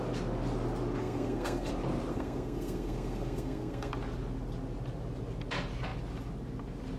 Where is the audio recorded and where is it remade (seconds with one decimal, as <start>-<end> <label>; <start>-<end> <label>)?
0.0-1.0 recorded; 1.0-1.7 remade; 1.7-2.1 recorded; 2.1-3.9 remade; 3.9-7.0 recorded